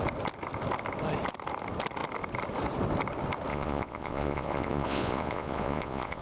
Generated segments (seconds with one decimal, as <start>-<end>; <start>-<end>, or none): 3.5-6.2